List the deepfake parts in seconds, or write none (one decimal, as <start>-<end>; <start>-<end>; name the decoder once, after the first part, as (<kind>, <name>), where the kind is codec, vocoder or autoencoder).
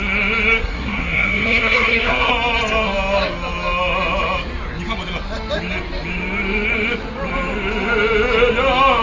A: 0.6-2.3 (codec, SNAC)